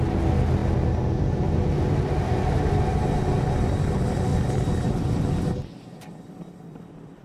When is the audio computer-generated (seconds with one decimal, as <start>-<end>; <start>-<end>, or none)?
4.3-5.4